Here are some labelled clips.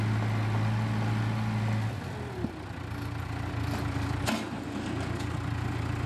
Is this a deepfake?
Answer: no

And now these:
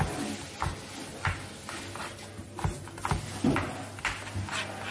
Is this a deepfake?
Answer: no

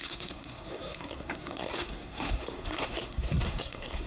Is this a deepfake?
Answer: yes